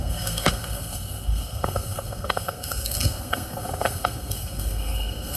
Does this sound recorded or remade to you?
remade